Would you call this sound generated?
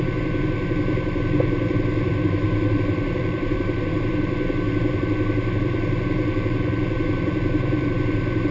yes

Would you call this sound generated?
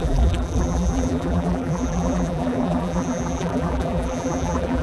yes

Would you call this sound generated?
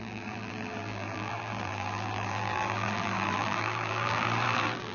yes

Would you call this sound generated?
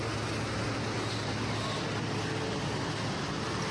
no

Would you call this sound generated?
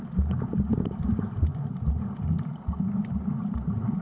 no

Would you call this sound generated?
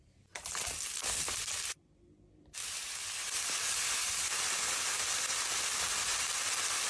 yes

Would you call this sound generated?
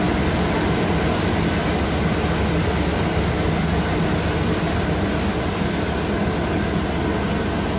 no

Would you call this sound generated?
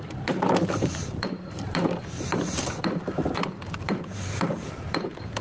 yes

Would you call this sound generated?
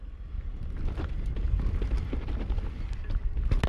no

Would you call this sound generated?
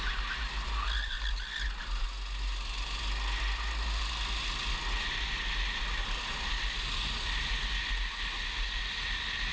no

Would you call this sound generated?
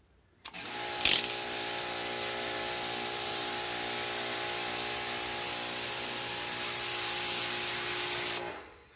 no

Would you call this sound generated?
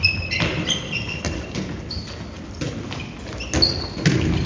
no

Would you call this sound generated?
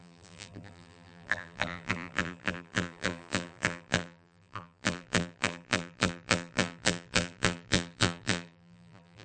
yes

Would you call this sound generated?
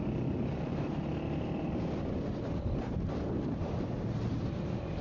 no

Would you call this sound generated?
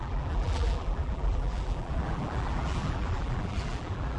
yes